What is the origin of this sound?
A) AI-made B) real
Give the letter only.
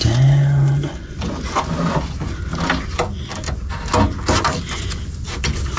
B